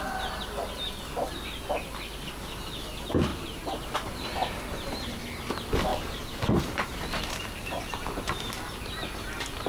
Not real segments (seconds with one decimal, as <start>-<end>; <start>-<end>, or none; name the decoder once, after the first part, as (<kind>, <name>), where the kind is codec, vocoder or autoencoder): 5.9-8.5 (vocoder, BigVGAN v2)